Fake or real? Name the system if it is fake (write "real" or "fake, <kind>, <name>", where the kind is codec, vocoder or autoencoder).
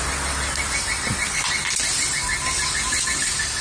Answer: real